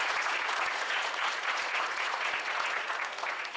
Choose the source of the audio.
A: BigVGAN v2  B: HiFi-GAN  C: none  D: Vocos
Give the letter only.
D